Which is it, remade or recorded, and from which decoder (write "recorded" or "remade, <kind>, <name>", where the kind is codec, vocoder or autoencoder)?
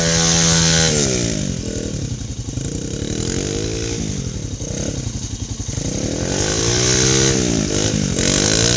recorded